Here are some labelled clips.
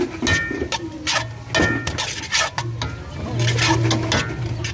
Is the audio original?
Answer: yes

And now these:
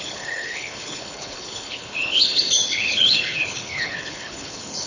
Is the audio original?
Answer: no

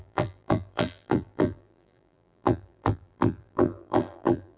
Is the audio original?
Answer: no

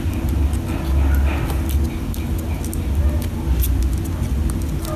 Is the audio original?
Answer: yes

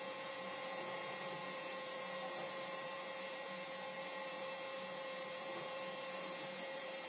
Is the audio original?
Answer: no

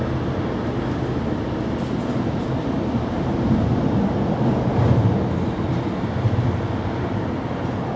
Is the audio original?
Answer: yes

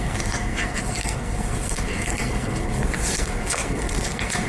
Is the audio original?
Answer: no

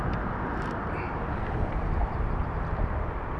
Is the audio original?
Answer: yes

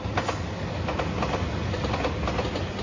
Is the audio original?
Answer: yes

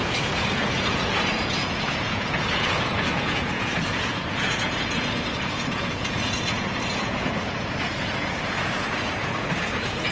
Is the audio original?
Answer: no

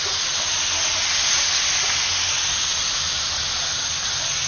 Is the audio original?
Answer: yes